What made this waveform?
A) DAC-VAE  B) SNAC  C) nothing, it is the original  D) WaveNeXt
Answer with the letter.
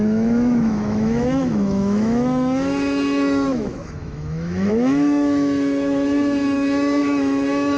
A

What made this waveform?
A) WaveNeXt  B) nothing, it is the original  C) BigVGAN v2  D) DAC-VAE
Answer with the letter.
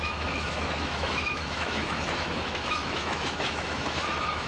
D